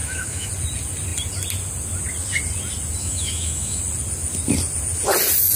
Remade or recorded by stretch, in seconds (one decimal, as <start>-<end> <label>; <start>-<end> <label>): 0.0-0.5 remade; 0.5-3.0 recorded; 3.0-3.8 remade; 3.8-5.6 recorded